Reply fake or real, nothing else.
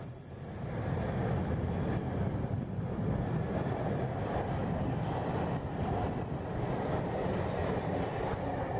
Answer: real